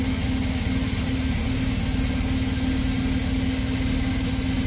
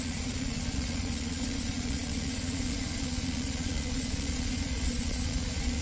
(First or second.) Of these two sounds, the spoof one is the second